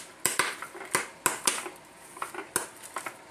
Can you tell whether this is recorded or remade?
recorded